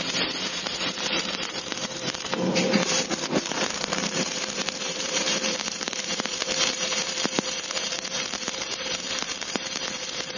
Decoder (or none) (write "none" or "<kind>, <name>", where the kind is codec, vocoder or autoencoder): vocoder, BigVGAN v2